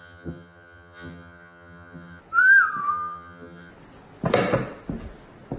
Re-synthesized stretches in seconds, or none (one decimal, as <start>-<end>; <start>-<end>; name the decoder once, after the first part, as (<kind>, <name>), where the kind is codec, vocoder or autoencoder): 0.0-2.2 (vocoder, HiFi-GAN); 2.9-3.7